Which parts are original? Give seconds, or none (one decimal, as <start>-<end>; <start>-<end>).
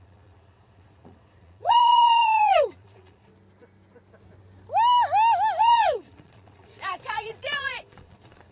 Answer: 3.3-5.6